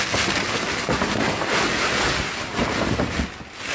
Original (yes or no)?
yes